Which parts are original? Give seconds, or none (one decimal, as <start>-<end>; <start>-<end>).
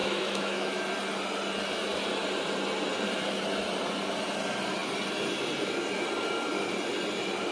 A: 0.8-7.5